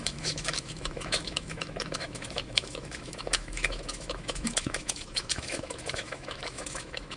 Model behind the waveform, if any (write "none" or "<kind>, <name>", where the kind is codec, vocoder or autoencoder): autoencoder, DAC-VAE